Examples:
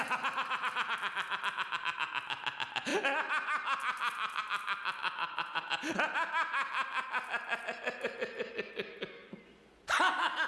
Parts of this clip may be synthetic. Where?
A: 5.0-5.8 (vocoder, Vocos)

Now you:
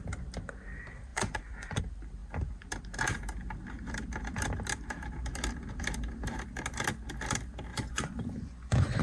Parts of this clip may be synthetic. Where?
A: 1.1-1.8 (vocoder, Vocos); 7.7-9.0

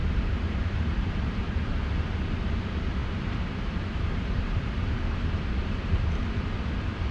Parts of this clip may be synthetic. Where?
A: 0.0-1.6 (vocoder, BigVGAN v2); 3.0-6.2

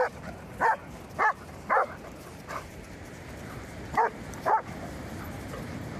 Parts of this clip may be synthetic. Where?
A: 0.0-1.2 (vocoder, BigVGAN v2); 2.3-6.0